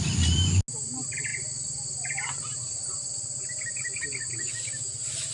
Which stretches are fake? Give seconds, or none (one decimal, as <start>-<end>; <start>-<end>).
1.3-4.5